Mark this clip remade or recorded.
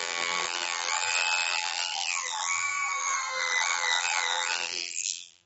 remade